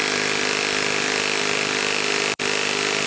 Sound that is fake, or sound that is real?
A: fake